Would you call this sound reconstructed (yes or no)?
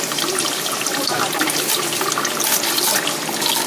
yes